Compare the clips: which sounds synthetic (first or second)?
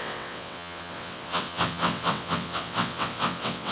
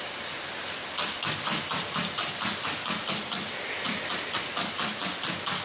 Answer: first